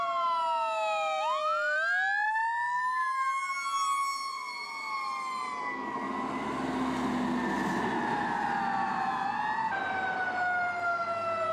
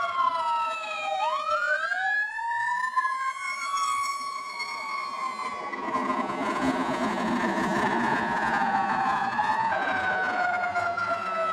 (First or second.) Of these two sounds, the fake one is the second